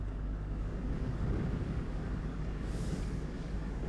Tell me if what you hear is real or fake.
fake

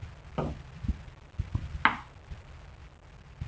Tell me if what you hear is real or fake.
real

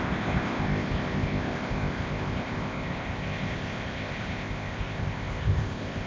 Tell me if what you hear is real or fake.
fake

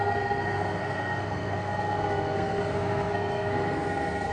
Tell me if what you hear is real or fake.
fake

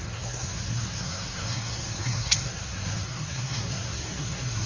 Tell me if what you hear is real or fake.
fake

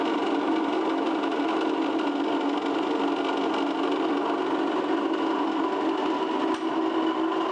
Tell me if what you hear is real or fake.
real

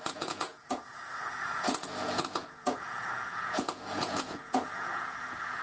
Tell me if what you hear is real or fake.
fake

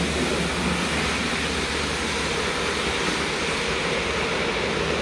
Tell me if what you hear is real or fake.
real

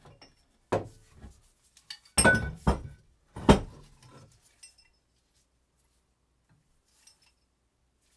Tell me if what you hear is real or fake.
real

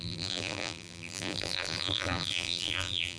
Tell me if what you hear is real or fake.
fake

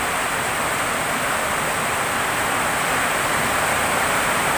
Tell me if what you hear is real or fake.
real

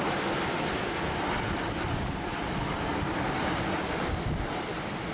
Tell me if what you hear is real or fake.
real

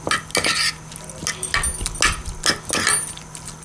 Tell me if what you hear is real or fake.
real